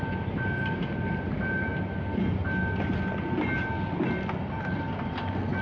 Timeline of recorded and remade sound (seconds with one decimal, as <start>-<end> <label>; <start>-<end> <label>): 0.0-5.6 recorded